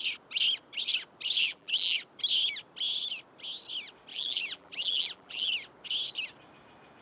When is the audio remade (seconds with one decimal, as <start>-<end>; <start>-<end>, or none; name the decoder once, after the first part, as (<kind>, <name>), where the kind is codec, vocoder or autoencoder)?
1.4-2.0 (vocoder, BigVGAN v2); 4.1-5.5